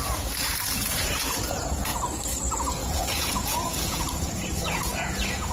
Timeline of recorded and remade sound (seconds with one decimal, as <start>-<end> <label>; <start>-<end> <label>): 0.0-1.9 remade; 1.9-2.4 recorded; 2.4-5.5 remade